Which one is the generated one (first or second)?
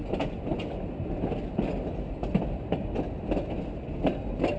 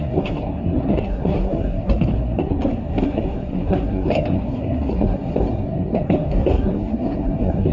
second